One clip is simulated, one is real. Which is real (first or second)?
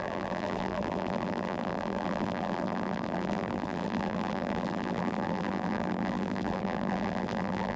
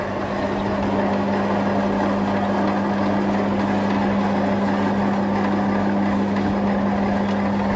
second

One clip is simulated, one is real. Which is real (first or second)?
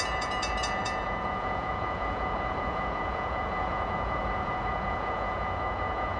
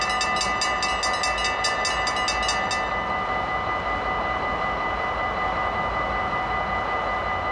second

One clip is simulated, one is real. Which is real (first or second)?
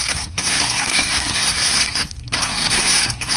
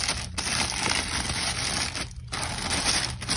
second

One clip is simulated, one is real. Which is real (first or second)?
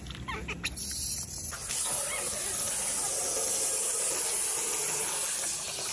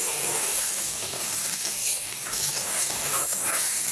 first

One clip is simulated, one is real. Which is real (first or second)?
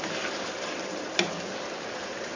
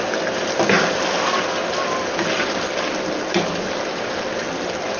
second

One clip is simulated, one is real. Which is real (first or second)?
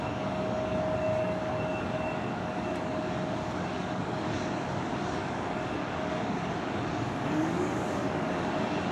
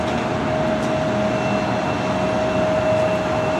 second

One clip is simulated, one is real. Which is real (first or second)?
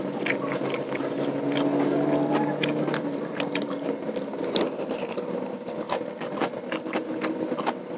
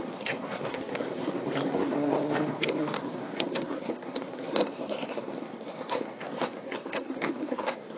first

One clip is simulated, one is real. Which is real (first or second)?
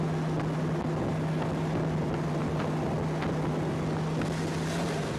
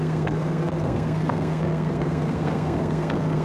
first